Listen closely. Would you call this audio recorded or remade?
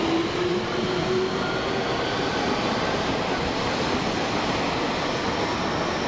recorded